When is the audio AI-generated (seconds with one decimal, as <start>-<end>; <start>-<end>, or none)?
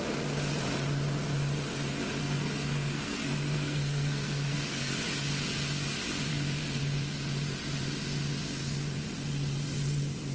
2.2-4.9; 6.3-6.8